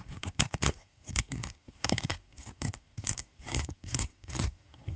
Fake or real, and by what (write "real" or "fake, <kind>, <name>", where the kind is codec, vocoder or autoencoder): fake, codec, SNAC